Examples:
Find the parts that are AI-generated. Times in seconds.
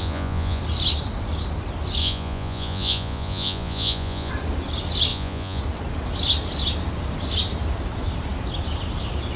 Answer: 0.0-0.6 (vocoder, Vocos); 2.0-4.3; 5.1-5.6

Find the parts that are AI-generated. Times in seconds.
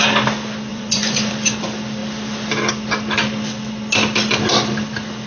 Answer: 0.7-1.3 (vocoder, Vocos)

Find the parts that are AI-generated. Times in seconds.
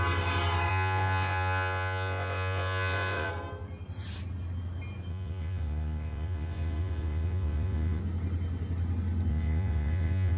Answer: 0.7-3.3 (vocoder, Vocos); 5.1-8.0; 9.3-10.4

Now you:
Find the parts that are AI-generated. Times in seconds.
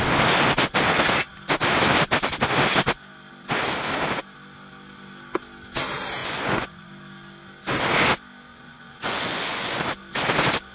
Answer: 6.2-6.9 (vocoder, Vocos); 8.5-9.8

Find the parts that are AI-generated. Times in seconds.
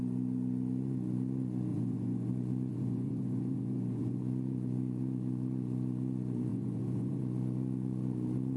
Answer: 1.7-2.3 (vocoder, Vocos); 2.7-4.2; 6.5-7.2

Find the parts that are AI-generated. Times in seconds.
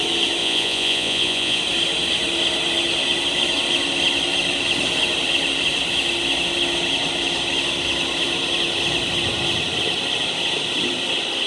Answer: 0.4-1.6 (vocoder, Vocos)